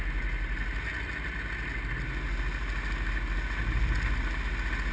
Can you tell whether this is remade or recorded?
recorded